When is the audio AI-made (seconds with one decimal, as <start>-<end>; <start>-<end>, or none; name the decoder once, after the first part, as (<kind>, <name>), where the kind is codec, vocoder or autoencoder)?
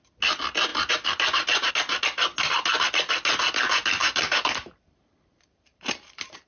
0.7-1.7 (vocoder, BigVGAN v2); 4.0-6.5